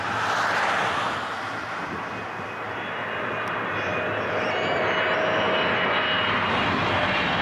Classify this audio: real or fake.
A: real